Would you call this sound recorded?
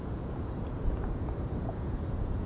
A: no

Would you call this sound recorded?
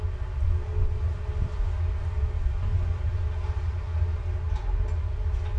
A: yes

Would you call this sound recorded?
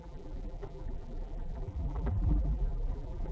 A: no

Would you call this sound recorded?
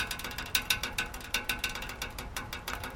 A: yes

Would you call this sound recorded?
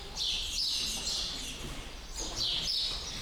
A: yes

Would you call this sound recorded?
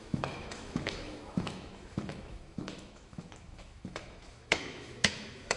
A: no